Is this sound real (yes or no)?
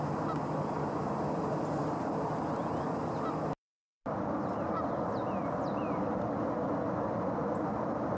yes